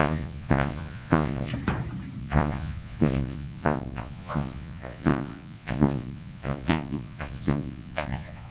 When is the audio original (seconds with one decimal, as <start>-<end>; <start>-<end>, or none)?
1.5-2.2